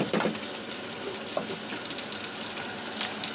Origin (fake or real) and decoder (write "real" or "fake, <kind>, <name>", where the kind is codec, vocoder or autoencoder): real